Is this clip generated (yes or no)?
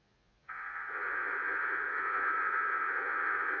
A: yes